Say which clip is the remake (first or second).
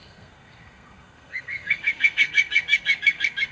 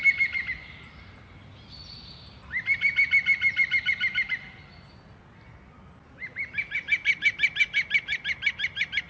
first